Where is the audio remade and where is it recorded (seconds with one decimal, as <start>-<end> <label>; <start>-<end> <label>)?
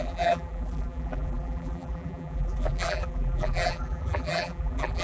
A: 0.0-5.0 remade